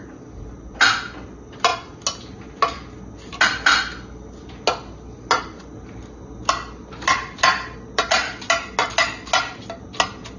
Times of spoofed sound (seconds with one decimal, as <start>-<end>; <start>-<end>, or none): none